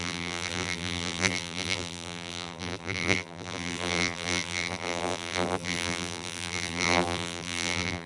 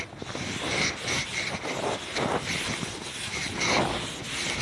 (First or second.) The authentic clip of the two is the second